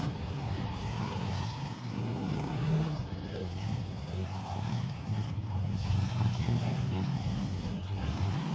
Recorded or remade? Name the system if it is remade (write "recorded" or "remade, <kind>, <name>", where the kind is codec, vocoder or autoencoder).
remade, codec, SNAC